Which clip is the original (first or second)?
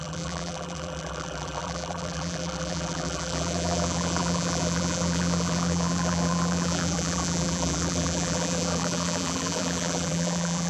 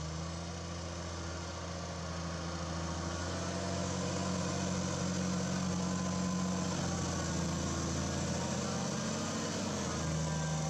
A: second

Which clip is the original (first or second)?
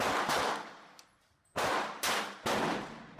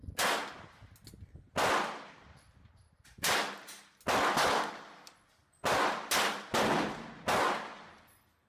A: second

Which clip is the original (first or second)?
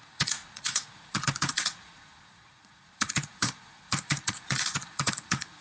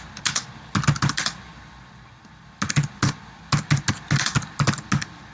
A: second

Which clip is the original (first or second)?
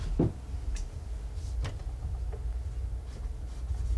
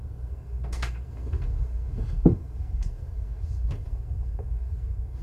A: first